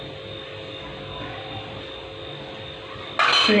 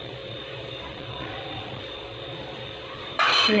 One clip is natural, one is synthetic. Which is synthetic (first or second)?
second